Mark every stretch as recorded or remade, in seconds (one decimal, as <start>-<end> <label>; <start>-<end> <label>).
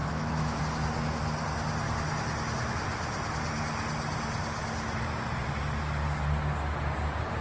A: 0.0-0.6 remade; 0.6-7.4 recorded